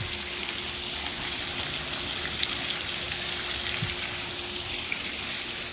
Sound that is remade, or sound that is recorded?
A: recorded